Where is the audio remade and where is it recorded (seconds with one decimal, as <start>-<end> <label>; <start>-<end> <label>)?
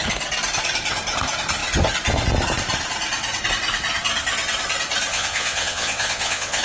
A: 0.0-5.1 recorded; 5.1-6.6 remade